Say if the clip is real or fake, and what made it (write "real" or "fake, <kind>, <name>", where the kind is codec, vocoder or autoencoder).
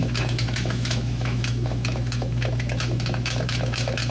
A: fake, autoencoder, DAC-VAE